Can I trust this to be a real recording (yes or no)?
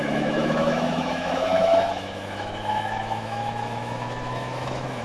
no